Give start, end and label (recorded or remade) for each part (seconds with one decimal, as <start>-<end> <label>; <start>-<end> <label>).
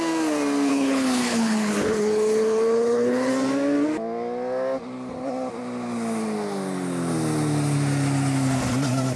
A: 0.0-0.7 recorded; 0.7-3.3 remade; 3.3-9.2 recorded